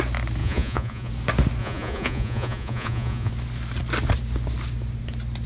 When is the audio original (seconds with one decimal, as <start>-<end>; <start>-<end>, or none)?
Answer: 0.0-0.4; 1.1-1.6; 3.3-5.5